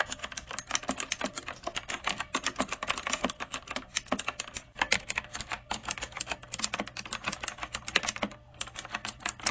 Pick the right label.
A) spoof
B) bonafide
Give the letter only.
B